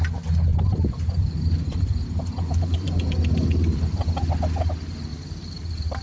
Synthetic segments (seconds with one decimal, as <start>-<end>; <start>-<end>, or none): 0.5-4.1; 5.1-6.0